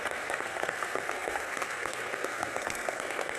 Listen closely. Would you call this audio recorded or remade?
remade